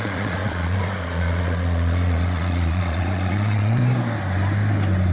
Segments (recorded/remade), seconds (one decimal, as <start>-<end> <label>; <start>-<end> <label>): 0.0-3.8 remade; 3.8-5.1 recorded